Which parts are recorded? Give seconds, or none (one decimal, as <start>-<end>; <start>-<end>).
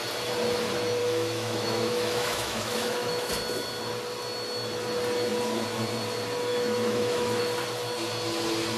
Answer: 0.0-1.0; 3.3-6.5; 7.4-8.8